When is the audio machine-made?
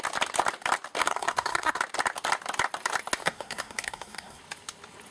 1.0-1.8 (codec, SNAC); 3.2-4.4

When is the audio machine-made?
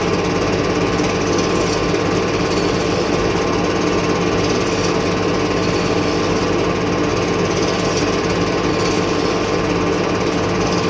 none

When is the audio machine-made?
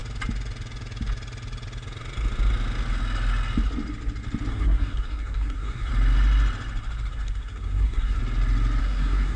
4.5-5.9 (codec, SNAC); 7.1-8.2; 8.8-9.4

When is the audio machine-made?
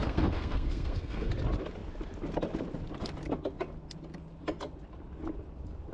0.0-1.3 (codec, SNAC)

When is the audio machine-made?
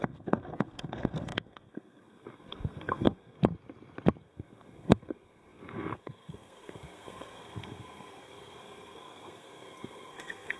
0.0-3.4 (codec, SNAC); 4.2-10.6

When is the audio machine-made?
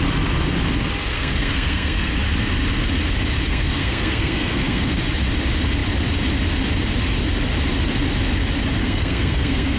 1.1-2.1 (codec, SNAC); 3.5-5.0; 8.8-9.8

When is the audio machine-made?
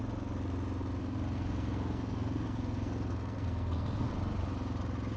1.0-4.1 (codec, SNAC)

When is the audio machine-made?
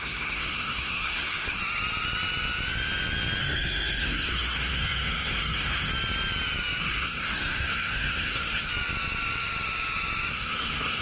0.0-1.6 (codec, SNAC); 3.4-5.9; 6.8-8.7; 10.3-11.0